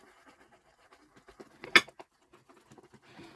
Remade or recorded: recorded